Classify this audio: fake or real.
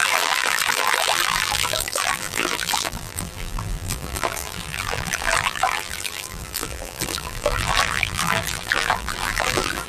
fake